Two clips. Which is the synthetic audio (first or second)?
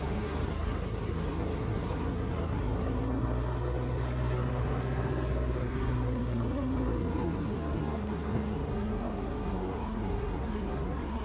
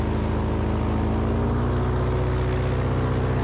first